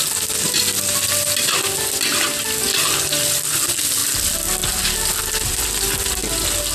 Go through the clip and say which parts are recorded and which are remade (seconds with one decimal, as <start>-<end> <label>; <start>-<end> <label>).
0.0-6.7 recorded